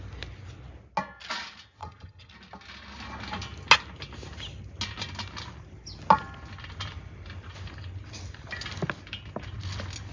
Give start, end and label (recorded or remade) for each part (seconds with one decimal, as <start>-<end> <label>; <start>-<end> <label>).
0.0-1.8 recorded; 1.8-2.3 remade; 2.3-10.1 recorded